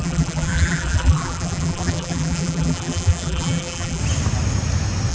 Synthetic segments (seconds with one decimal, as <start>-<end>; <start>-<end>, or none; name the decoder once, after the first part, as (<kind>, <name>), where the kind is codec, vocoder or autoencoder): 0.0-4.0 (vocoder, BigVGAN v2)